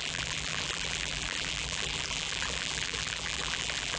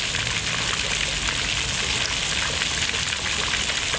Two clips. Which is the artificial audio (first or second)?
first